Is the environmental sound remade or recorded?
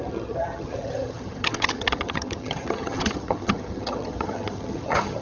remade